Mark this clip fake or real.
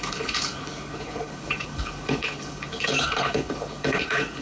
fake